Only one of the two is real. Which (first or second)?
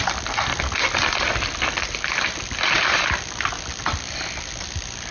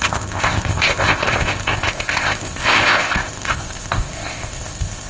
first